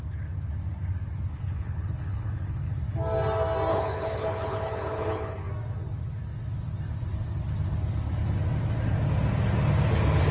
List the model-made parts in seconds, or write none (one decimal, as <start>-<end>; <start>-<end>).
1.3-2.8; 3.7-5.5